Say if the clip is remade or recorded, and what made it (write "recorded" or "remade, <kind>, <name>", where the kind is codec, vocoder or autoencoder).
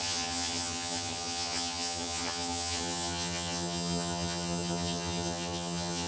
remade, vocoder, HiFi-GAN